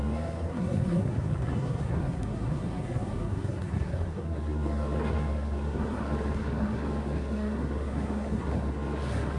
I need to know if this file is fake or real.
fake